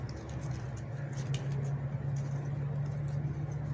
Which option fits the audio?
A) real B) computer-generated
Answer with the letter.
A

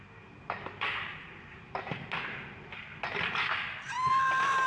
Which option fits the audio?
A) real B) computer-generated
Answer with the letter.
A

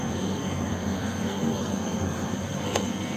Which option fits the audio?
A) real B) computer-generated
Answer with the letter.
B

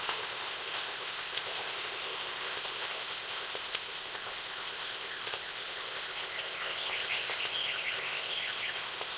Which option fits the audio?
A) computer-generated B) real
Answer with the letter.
A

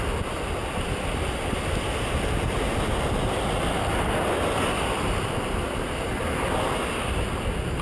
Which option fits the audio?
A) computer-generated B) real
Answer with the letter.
B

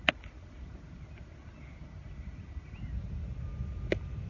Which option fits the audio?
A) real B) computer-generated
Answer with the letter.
A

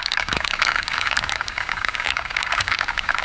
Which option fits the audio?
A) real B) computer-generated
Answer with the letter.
B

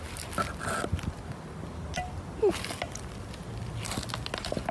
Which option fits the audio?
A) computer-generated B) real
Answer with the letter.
B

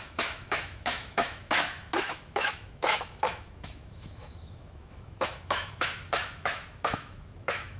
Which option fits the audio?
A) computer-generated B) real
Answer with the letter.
A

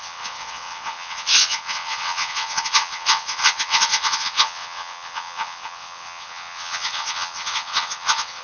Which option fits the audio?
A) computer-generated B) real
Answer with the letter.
A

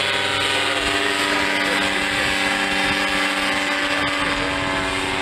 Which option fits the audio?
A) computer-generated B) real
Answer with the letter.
B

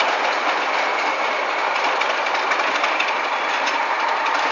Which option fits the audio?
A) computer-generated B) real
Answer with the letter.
B